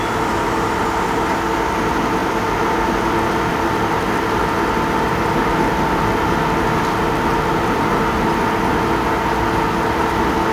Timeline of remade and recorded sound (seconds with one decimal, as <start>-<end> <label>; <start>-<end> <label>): 0.0-10.5 recorded